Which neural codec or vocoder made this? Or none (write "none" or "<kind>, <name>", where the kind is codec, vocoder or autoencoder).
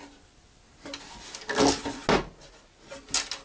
none